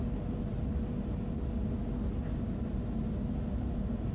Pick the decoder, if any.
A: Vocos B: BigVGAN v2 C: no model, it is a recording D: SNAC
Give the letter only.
C